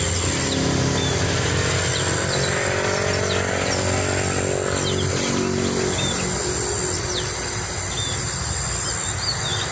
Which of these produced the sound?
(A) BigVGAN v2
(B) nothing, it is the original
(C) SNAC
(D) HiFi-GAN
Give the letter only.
B